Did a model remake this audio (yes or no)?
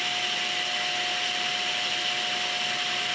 no